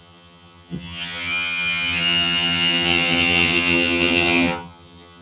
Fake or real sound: fake